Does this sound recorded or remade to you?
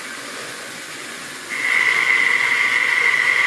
remade